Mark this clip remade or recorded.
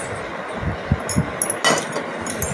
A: recorded